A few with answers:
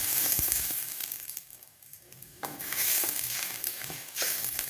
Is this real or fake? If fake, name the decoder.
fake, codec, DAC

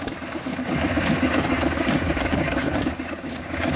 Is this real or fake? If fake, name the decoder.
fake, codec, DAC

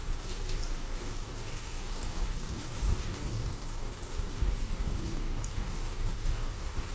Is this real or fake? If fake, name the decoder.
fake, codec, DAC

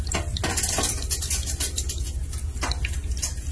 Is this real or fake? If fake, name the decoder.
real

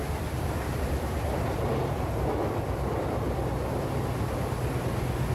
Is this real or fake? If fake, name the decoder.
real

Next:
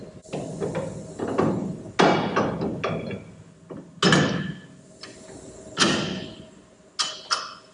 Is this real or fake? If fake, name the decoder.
real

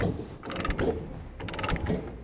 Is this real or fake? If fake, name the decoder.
real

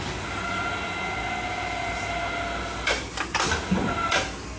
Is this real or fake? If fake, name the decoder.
real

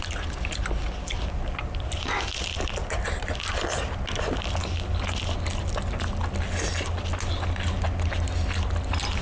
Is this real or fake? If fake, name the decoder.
real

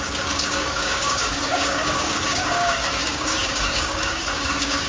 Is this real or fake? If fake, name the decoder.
fake, codec, DAC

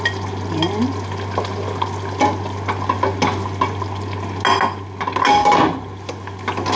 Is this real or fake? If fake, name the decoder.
real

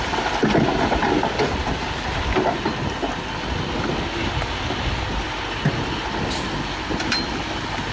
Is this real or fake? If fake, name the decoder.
real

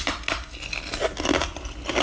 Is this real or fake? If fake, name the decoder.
real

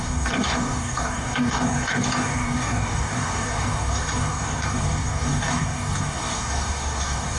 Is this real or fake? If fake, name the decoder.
fake, codec, DAC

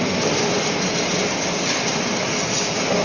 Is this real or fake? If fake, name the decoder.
real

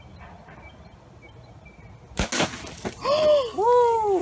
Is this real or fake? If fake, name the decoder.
real